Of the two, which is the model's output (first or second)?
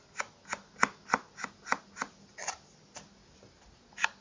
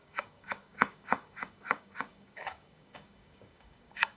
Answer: second